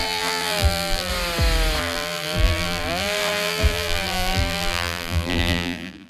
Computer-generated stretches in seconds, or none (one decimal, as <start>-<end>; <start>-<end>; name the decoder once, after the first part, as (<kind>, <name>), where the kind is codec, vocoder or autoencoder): 0.0-1.1 (vocoder, BigVGAN v2); 1.8-6.1